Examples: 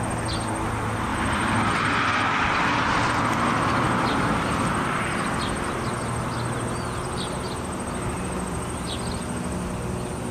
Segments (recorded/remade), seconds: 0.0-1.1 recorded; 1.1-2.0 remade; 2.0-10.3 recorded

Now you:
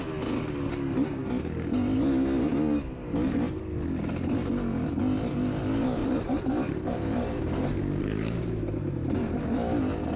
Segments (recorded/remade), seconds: 0.0-6.0 recorded; 6.0-9.4 remade; 9.4-10.2 recorded